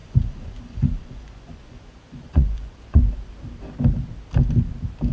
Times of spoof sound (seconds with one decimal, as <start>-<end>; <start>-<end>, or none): 0.0-3.1